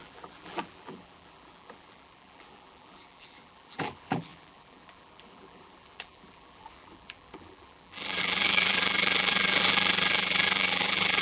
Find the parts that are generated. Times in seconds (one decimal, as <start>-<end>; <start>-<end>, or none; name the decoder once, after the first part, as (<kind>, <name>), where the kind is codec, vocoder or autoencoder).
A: 0.0-11.2 (vocoder, BigVGAN v2)